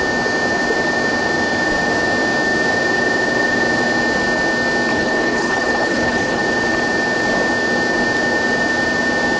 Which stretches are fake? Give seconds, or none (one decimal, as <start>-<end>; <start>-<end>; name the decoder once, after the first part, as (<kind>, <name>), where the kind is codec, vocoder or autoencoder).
4.9-6.4 (codec, HILCodec)